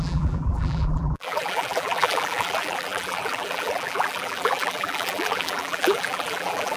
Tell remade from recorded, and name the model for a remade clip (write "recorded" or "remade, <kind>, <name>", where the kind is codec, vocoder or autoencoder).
remade, vocoder, BigVGAN v2